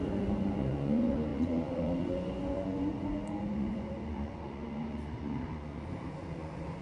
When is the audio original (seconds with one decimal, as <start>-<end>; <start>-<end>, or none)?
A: none